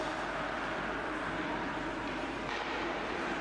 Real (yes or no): no